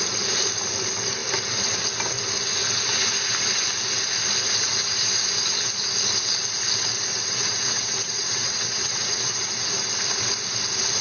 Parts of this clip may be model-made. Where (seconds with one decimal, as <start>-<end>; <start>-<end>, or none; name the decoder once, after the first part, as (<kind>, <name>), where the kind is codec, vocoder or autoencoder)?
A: 7.1-9.5 (vocoder, WaveNeXt)